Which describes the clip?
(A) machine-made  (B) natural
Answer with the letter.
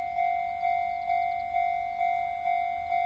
B